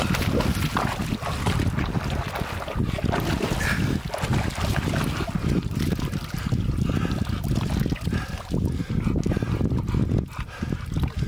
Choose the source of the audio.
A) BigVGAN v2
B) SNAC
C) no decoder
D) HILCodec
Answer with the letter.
C